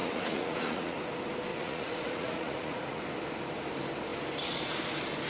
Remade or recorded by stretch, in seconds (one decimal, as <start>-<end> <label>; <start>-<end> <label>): 0.0-1.0 remade; 1.0-1.5 recorded; 1.5-3.0 remade; 3.0-5.3 recorded